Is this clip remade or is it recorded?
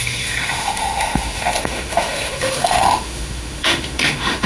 remade